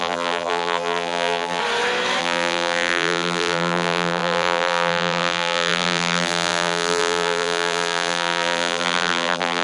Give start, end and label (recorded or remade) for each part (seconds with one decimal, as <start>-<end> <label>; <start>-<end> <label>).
0.0-1.6 remade; 1.6-2.2 recorded; 2.2-9.6 remade